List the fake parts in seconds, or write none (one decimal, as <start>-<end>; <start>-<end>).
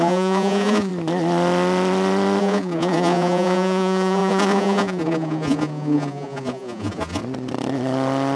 0.0-0.9; 2.4-7.2